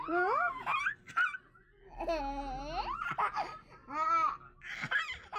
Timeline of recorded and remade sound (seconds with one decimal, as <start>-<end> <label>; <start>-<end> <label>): 0.0-5.4 recorded